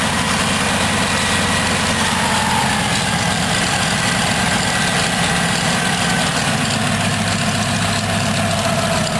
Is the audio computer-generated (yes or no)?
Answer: no